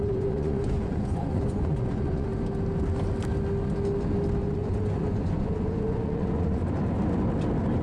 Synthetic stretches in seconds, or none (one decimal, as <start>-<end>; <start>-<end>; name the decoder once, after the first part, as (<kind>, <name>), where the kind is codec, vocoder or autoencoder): 0.0-2.3 (vocoder, Vocos); 4.4-6.6